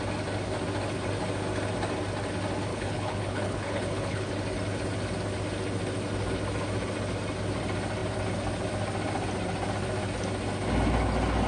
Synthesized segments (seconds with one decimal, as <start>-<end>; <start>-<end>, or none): 2.7-4.3